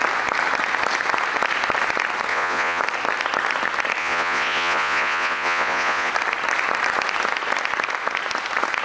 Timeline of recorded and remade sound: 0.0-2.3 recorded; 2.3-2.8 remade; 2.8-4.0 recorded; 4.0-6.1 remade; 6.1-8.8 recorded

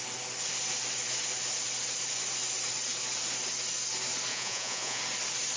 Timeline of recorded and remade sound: 0.0-4.3 recorded; 4.3-5.0 remade; 5.0-5.6 recorded

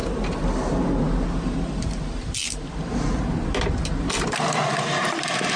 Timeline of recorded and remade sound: 0.0-5.6 recorded

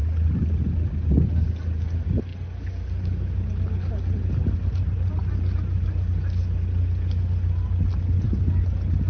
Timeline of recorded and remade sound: 0.0-9.1 recorded

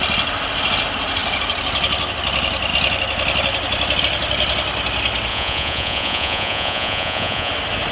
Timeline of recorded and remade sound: 0.0-5.3 recorded; 5.3-7.5 remade; 7.5-7.9 recorded

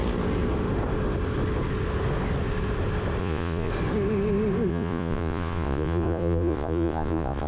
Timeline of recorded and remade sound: 0.0-3.2 recorded; 3.2-3.7 remade; 3.7-4.7 recorded; 4.7-7.5 remade

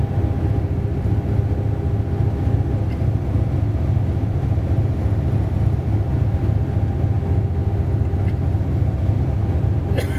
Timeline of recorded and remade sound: 0.0-10.2 recorded